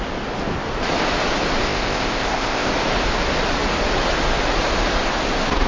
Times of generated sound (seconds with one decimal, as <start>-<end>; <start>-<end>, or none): 1.6-2.7